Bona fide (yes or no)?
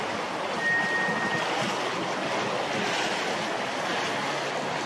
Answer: yes